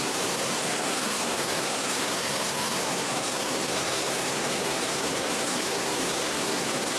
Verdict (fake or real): fake